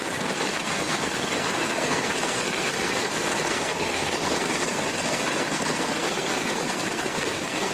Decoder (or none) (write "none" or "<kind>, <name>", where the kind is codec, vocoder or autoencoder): codec, SNAC